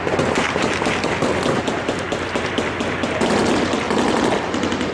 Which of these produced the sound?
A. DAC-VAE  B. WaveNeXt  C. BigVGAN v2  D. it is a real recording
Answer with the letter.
D